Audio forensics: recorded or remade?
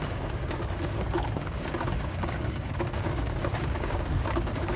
remade